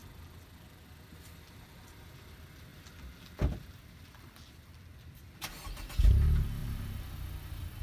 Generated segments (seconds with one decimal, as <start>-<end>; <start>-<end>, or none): 0.9-2.7; 3.9-7.8